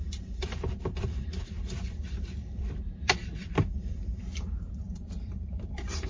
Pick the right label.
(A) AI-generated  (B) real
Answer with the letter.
A